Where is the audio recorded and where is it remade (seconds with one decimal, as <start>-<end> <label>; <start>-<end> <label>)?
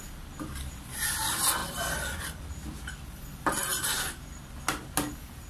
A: 0.0-5.5 recorded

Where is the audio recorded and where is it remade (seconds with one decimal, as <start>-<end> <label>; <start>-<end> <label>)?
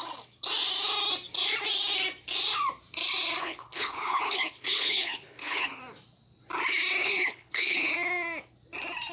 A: 0.0-3.4 recorded; 3.4-5.8 remade; 5.8-7.0 recorded; 7.0-7.9 remade; 7.9-9.1 recorded